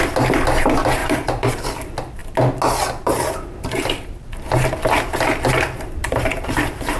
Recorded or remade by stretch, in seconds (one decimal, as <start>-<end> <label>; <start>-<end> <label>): 0.0-1.0 recorded; 1.0-1.5 remade; 1.5-6.0 recorded; 6.0-7.0 remade